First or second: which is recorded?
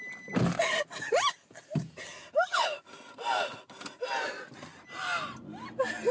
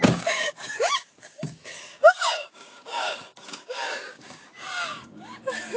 first